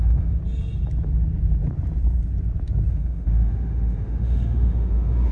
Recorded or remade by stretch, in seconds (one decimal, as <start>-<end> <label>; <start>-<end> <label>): 0.0-0.4 remade; 0.4-2.9 recorded; 2.9-5.3 remade